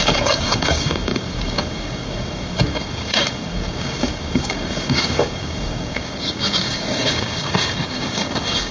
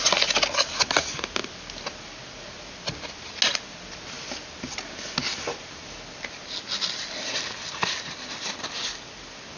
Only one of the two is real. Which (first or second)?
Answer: second